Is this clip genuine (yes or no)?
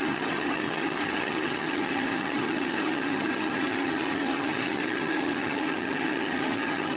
no